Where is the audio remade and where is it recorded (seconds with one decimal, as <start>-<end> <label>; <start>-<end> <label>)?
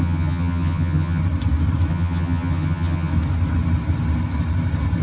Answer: 0.0-1.2 remade; 1.2-1.9 recorded; 1.9-3.1 remade; 3.1-5.0 recorded